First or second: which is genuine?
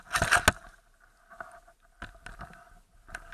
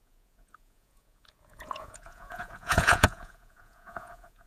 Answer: first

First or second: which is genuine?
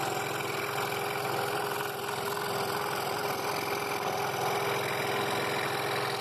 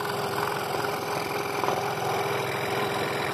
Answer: first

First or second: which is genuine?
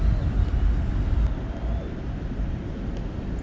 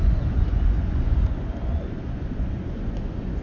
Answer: first